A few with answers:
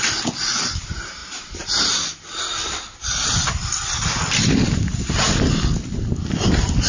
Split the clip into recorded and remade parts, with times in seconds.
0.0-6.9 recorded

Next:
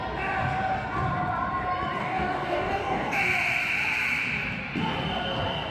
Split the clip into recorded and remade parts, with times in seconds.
0.0-2.0 recorded; 2.0-3.2 remade; 3.2-5.7 recorded

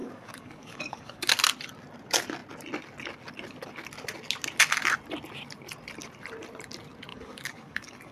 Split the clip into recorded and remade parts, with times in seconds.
0.0-1.3 remade; 1.3-7.1 recorded; 7.1-8.1 remade

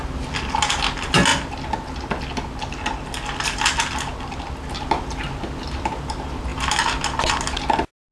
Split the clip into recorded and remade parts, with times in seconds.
0.0-8.1 recorded

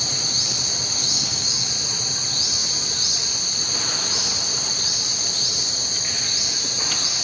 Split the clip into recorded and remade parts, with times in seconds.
0.0-1.0 recorded; 1.0-1.7 remade; 1.7-7.2 recorded

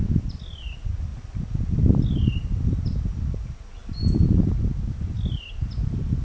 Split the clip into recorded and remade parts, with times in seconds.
0.0-6.2 recorded

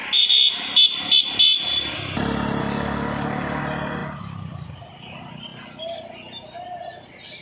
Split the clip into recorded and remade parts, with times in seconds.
0.0-2.6 recorded; 2.6-3.6 remade; 3.6-7.4 recorded

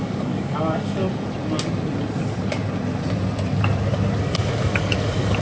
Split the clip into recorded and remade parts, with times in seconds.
0.0-1.0 remade; 1.0-4.2 recorded; 4.2-5.4 remade